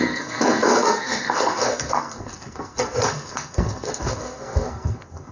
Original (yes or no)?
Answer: no